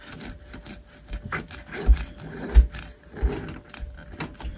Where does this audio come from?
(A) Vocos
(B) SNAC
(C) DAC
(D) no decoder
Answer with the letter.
D